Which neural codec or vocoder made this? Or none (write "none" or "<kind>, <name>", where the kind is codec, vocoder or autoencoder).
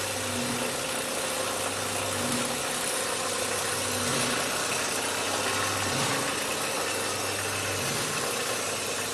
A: none